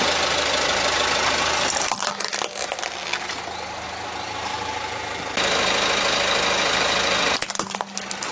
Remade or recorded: recorded